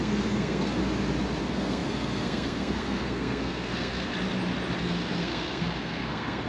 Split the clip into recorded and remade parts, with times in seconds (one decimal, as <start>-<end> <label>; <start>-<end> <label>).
0.0-0.8 remade; 0.8-1.4 recorded; 1.4-4.1 remade; 4.1-4.8 recorded; 4.8-6.5 remade